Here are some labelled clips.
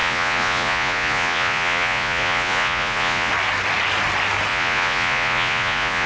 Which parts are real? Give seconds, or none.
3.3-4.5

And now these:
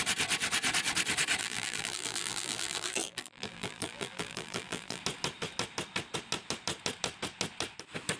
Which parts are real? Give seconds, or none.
0.0-1.4; 5.0-8.2

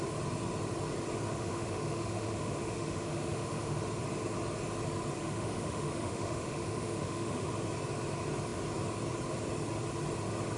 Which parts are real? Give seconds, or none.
0.0-1.3; 3.8-5.2; 7.5-10.6

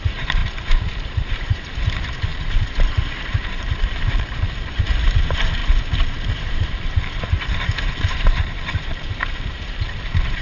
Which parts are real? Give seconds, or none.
5.6-6.4

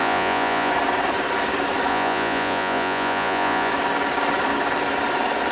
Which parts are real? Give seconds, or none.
0.7-1.9; 3.7-5.5